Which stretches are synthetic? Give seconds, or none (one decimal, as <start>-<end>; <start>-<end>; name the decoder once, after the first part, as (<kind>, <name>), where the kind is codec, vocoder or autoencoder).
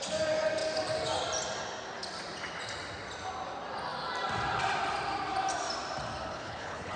6.3-7.0 (codec, HILCodec)